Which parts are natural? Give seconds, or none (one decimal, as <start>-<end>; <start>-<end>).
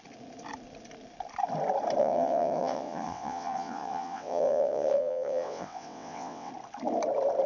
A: 0.0-2.0; 6.5-7.5